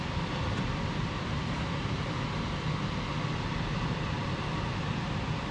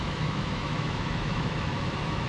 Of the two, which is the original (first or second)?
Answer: first